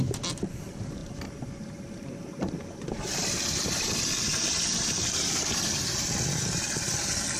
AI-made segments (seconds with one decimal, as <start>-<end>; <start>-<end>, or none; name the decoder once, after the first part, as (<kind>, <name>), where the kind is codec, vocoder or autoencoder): 0.6-7.4 (vocoder, BigVGAN v2)